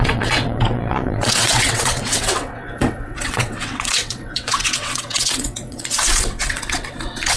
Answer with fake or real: fake